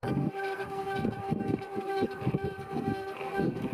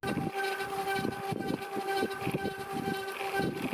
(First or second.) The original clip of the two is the second